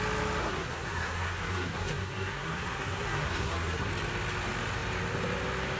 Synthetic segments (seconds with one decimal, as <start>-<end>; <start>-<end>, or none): 0.4-3.9